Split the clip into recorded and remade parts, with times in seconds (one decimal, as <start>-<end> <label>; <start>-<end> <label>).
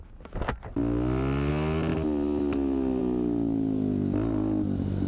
0.0-5.1 recorded